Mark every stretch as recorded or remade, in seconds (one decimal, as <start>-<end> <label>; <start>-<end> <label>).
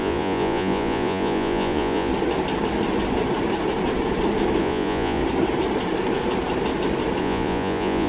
0.0-2.1 remade; 2.1-4.6 recorded; 4.6-5.2 remade; 5.2-7.2 recorded; 7.2-8.1 remade